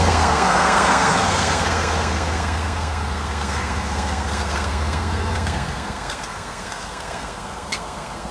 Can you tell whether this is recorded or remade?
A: remade